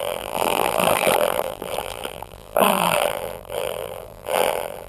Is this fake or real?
fake